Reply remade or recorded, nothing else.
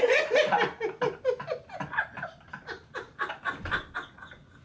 recorded